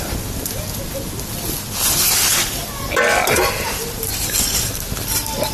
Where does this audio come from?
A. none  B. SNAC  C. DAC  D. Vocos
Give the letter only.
A